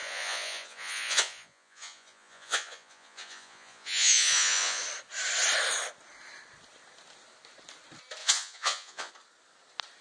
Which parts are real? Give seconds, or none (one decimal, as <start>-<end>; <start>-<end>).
4.8-8.2; 9.1-10.0